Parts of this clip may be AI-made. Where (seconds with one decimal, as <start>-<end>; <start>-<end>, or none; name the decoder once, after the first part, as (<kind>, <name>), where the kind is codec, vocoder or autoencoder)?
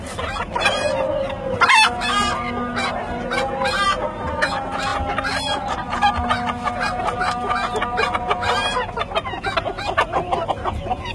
none